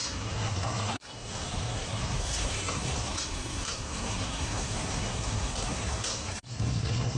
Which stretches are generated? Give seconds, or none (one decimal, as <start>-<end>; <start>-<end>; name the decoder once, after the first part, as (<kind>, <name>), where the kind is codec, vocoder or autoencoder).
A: 0.0-7.2 (codec, SNAC)